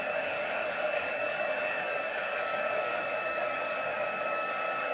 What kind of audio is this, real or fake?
fake